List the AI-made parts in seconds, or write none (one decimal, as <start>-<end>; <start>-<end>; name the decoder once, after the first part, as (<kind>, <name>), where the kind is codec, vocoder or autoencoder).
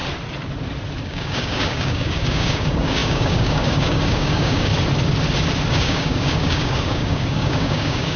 1.0-4.7 (codec, DAC); 5.7-8.2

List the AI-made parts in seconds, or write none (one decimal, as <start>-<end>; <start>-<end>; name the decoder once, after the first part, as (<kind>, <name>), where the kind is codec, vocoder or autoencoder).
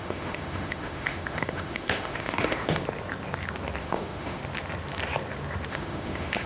0.0-2.8 (autoencoder, DAC-VAE); 3.8-4.4; 5.7-6.5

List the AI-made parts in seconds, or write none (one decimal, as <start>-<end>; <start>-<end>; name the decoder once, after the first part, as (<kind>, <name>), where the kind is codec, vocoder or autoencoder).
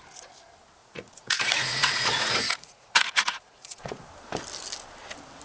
0.8-4.0 (vocoder, Vocos)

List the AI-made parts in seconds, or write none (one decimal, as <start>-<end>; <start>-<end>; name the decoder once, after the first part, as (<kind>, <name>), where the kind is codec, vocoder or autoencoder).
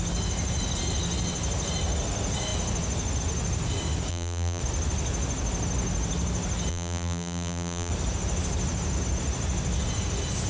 4.1-4.6 (vocoder, BigVGAN v2); 6.7-7.9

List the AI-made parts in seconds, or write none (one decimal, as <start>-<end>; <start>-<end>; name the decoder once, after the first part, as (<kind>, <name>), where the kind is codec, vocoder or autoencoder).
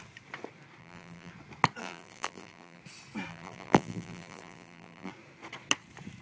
0.8-1.3 (vocoder, BigVGAN v2); 1.8-2.8; 3.3-5.1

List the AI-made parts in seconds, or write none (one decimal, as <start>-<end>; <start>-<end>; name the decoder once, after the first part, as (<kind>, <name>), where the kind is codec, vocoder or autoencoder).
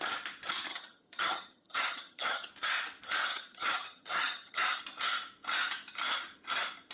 0.7-2.5 (vocoder, HiFi-GAN); 3.3-4.8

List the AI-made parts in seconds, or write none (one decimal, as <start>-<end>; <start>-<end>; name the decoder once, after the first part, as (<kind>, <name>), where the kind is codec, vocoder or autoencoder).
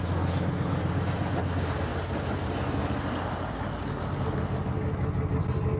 none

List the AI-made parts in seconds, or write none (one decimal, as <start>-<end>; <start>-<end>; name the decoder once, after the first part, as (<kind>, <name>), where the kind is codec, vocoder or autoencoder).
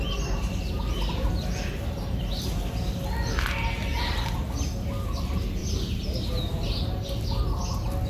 5.6-7.1 (vocoder, BigVGAN v2)